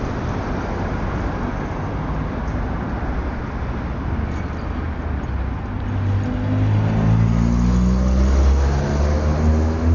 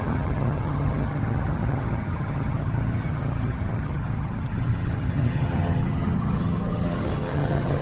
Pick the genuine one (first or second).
first